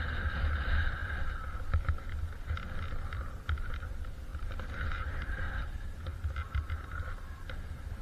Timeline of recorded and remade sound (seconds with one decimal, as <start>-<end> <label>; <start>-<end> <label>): 0.0-4.3 recorded; 4.3-5.4 remade; 5.4-8.0 recorded